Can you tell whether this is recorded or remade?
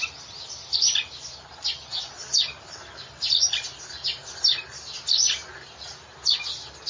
recorded